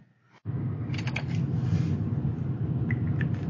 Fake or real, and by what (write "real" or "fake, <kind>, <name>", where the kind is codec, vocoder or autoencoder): real